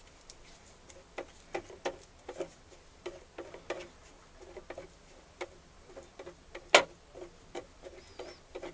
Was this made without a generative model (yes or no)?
yes